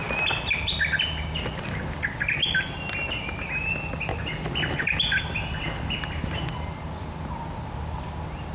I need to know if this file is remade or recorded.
recorded